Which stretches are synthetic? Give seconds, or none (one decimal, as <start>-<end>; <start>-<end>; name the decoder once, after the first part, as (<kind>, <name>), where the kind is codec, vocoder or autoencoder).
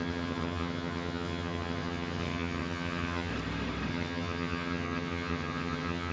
0.0-3.3 (vocoder, HiFi-GAN); 3.9-6.1